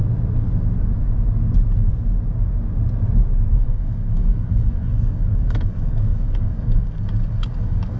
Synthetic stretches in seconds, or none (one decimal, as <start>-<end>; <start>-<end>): 3.5-8.0